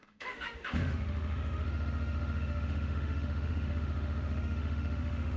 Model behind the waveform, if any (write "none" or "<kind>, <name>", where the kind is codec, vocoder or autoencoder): autoencoder, DAC-VAE